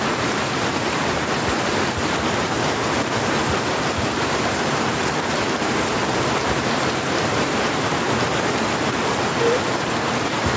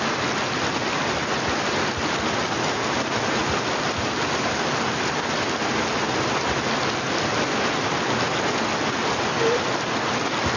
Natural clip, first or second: second